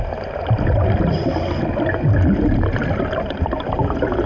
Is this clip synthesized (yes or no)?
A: no